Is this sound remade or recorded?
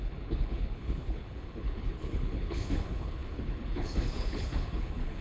remade